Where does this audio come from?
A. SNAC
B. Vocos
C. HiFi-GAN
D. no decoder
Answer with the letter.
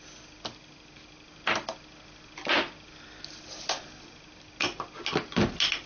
D